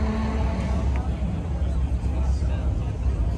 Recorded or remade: recorded